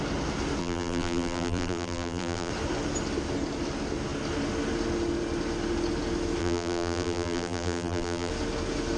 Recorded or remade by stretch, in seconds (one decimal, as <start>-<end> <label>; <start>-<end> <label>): 0.0-0.6 recorded; 0.6-2.5 remade; 2.5-6.4 recorded; 6.4-8.3 remade; 8.3-9.0 recorded